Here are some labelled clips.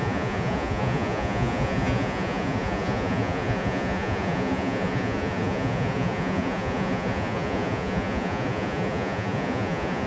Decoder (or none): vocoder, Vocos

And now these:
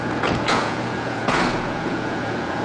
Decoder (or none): vocoder, Vocos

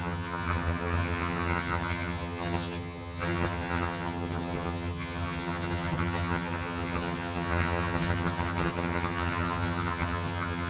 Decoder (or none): vocoder, HiFi-GAN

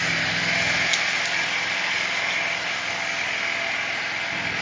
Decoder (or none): none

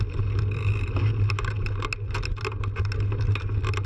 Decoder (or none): none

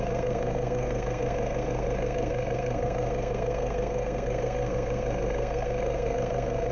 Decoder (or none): codec, SNAC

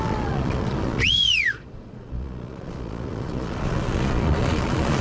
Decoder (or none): vocoder, Vocos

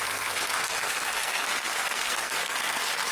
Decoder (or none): codec, SNAC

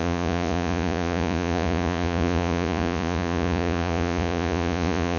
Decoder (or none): vocoder, Vocos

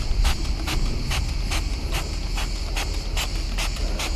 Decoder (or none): none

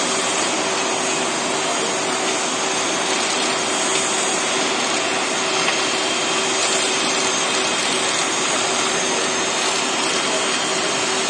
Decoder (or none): none